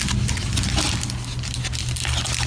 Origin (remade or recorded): recorded